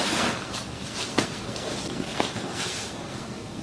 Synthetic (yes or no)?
yes